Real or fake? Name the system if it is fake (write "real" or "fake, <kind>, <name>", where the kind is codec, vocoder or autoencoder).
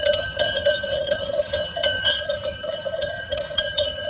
fake, vocoder, HiFi-GAN